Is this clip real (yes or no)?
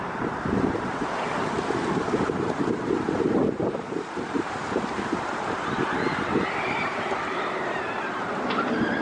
no